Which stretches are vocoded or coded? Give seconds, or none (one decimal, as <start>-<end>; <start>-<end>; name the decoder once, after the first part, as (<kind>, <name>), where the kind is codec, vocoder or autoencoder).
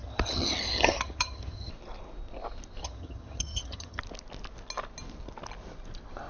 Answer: 0.0-1.7 (vocoder, HiFi-GAN); 2.8-4.0